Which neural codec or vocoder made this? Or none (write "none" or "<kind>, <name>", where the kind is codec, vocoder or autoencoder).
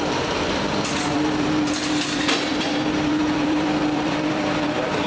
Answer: vocoder, BigVGAN v2